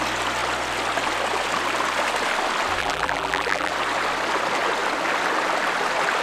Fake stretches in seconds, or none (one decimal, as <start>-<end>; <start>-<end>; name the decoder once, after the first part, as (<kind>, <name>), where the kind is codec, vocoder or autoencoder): 2.8-3.7 (vocoder, BigVGAN v2)